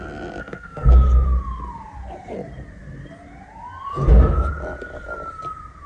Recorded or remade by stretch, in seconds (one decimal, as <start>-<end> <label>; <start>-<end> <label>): 0.0-0.4 recorded; 0.4-0.9 remade; 0.9-5.9 recorded